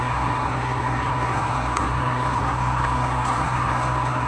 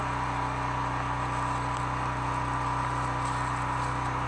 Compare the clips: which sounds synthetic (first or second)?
first